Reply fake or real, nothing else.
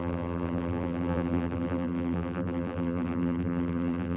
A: fake